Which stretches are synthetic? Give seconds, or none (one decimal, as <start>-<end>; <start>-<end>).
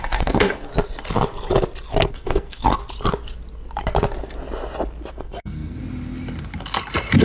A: 0.0-0.7; 2.1-2.8; 5.1-5.8